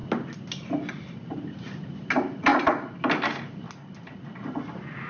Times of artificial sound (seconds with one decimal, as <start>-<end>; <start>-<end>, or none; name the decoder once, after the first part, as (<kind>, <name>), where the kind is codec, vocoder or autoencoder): none